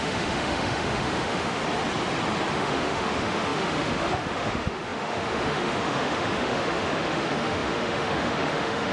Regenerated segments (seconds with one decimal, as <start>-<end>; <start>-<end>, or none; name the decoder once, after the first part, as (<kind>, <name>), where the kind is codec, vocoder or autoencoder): 0.0-1.6 (autoencoder, DAC-VAE); 2.5-8.9